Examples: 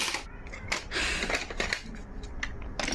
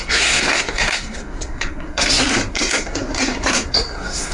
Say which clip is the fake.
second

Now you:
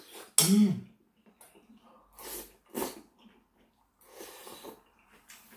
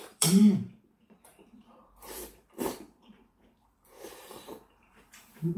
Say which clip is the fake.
second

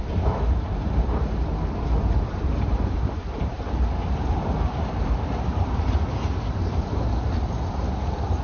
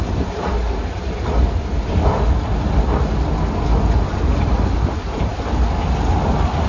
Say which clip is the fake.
first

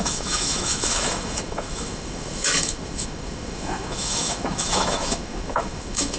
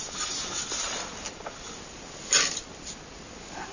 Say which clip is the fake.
first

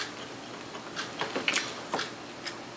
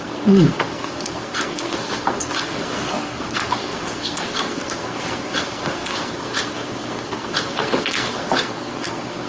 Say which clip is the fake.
second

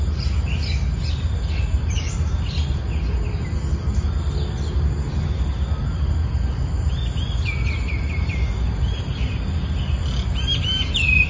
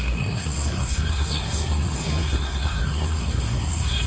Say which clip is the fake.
second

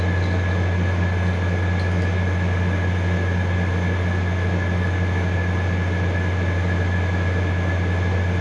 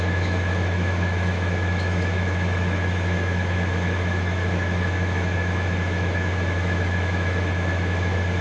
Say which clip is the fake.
second